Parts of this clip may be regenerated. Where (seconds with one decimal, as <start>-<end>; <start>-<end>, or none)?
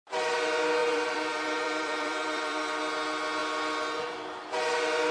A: 0.8-2.8